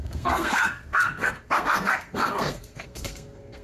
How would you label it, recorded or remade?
remade